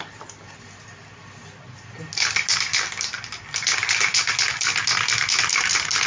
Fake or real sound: real